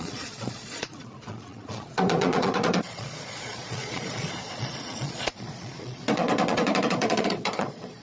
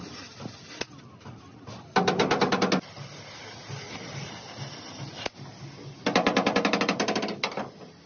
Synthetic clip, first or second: first